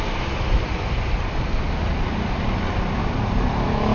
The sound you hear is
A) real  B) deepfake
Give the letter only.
A